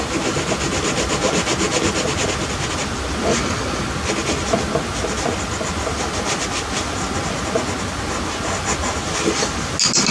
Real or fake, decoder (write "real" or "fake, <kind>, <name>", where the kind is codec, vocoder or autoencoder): real